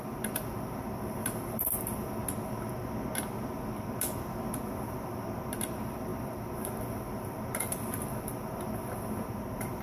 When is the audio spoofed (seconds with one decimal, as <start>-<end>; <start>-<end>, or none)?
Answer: 0.0-2.2; 3.9-9.8